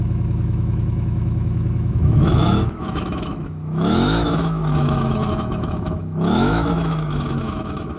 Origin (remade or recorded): remade